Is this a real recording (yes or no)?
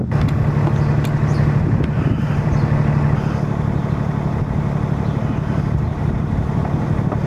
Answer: yes